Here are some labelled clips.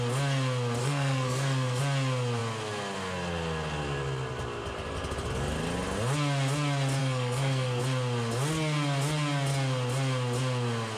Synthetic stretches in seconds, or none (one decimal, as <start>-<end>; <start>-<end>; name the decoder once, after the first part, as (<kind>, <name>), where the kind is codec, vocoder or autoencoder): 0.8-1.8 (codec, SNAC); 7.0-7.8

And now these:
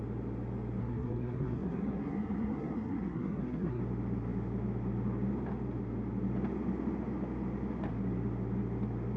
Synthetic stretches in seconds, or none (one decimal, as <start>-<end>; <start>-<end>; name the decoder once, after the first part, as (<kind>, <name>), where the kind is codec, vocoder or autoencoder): 0.8-3.8 (codec, SNAC)

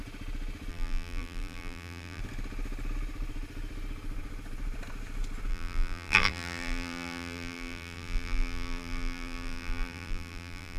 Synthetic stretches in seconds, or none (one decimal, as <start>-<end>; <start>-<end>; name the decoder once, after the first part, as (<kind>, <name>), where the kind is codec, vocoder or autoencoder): 0.7-2.2 (vocoder, BigVGAN v2); 5.5-10.8

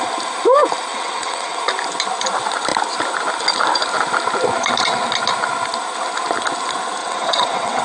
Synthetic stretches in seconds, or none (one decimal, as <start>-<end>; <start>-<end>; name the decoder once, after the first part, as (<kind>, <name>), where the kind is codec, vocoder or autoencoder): 0.9-1.6 (vocoder, WaveNeXt); 7.0-7.8

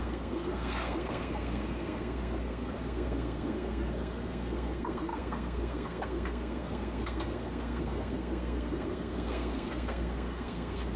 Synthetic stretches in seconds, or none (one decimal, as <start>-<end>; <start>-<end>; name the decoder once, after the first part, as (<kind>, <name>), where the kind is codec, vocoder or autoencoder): 0.0-11.0 (codec, SNAC)